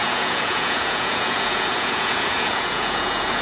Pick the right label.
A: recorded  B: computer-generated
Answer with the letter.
B